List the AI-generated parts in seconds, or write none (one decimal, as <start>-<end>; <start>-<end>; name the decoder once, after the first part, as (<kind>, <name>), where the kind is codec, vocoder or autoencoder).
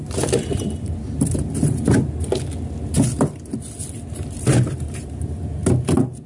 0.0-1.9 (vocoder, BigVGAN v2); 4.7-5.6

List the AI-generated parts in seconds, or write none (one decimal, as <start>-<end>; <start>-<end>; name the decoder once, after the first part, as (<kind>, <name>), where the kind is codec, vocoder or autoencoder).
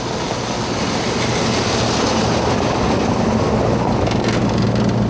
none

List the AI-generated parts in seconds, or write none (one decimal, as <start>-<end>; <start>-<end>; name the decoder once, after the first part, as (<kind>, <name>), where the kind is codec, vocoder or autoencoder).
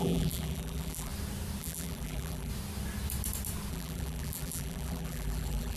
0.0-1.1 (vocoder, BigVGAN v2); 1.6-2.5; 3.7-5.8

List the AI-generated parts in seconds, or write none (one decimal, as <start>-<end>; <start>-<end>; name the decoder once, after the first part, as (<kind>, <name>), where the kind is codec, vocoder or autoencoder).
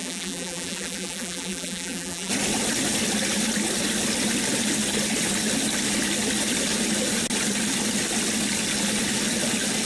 0.0-2.3 (vocoder, BigVGAN v2)